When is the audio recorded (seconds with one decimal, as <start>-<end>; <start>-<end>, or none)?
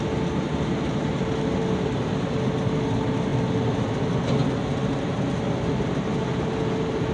0.0-7.1